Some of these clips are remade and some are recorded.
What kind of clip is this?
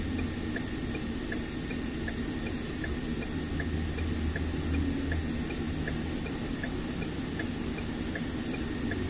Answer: recorded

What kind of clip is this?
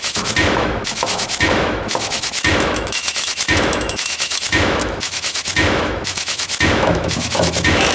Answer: remade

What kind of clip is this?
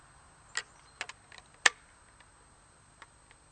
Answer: recorded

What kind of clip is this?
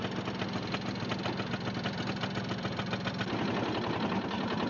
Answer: recorded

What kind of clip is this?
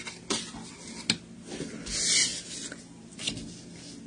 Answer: recorded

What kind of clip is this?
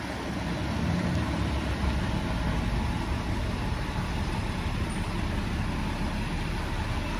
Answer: recorded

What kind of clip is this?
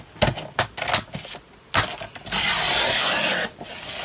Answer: recorded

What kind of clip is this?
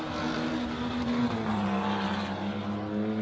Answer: recorded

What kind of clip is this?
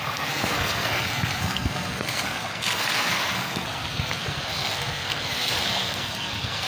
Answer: remade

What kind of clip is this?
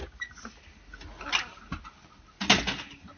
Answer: recorded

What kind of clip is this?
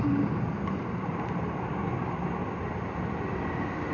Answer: recorded